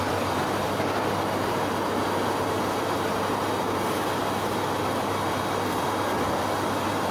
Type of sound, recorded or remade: recorded